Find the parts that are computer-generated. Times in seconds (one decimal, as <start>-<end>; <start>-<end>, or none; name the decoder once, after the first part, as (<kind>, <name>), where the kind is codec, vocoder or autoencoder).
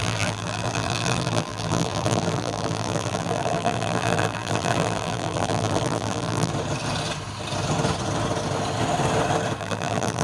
0.0-6.5 (vocoder, BigVGAN v2); 9.6-10.2